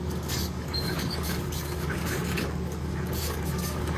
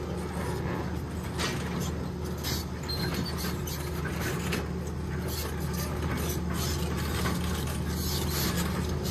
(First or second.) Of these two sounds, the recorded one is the second